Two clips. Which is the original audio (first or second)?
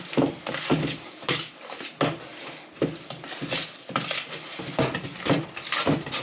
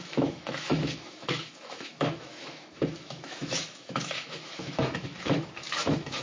first